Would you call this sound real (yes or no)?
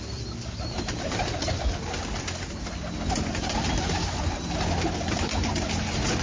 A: yes